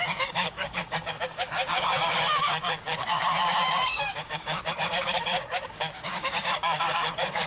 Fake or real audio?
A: fake